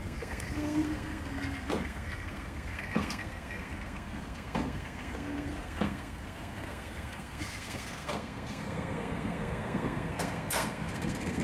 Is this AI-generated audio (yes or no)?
yes